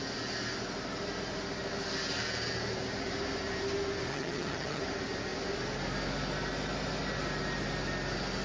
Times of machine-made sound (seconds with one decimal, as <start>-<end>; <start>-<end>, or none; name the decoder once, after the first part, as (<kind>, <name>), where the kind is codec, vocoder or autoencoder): 4.1-4.8 (vocoder, HiFi-GAN)